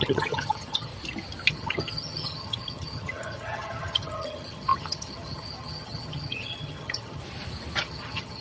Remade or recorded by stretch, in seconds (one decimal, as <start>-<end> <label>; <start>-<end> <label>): 0.0-0.9 remade; 0.9-1.5 recorded; 1.5-7.2 remade; 7.2-7.8 recorded; 7.8-8.4 remade

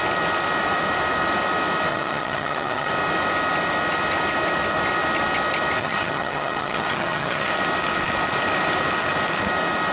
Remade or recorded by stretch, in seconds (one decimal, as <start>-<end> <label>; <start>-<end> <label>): 0.0-1.9 recorded; 1.9-2.9 remade; 2.9-5.8 recorded; 5.8-7.5 remade; 7.5-9.9 recorded